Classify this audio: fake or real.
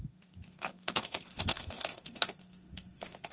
fake